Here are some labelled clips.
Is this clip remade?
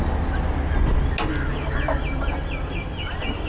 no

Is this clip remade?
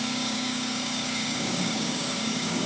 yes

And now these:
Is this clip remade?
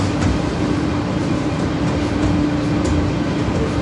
no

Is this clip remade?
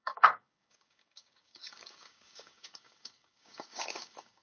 yes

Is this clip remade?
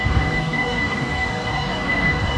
yes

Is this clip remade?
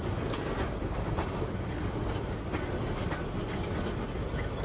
no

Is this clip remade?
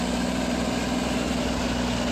no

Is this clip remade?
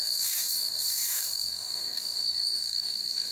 yes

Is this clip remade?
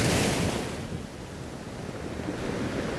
no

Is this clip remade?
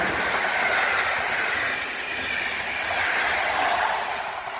no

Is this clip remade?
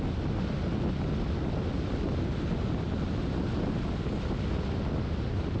no